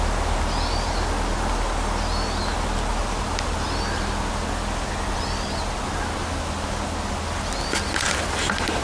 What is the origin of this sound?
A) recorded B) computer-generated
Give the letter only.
A